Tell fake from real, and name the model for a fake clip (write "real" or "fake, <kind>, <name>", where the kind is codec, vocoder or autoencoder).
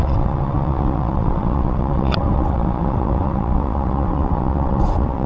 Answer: fake, vocoder, WaveNeXt